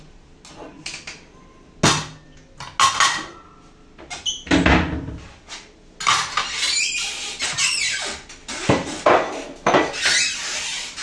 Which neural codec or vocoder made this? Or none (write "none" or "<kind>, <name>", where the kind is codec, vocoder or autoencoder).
none